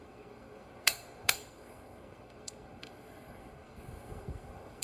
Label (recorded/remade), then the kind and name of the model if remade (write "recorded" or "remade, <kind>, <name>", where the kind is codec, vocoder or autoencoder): remade, codec, SNAC